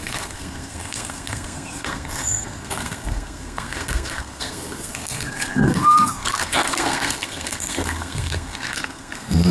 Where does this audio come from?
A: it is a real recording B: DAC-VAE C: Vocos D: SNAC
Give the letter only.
D